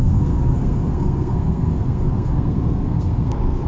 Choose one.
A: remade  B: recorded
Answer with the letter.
A